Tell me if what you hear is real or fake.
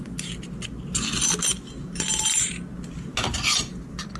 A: real